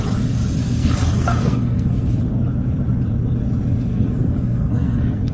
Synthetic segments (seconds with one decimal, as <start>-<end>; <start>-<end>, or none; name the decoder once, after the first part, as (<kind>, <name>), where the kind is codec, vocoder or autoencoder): 0.6-2.1 (codec, SNAC); 3.9-5.3